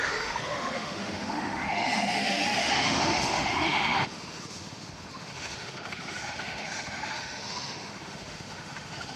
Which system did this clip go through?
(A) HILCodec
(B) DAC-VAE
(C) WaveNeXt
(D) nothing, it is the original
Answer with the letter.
B